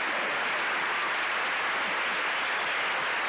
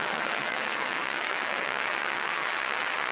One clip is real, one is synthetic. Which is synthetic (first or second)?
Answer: second